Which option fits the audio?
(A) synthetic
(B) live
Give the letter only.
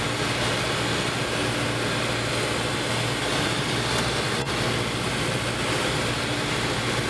B